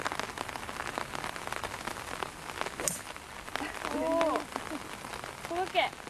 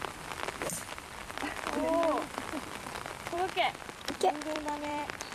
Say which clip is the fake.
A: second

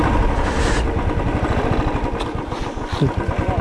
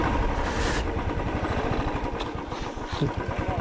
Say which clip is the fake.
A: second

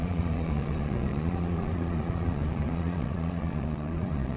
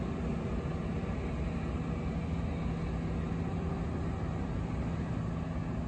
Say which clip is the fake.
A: first